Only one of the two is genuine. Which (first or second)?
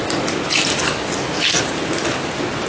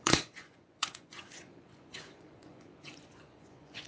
first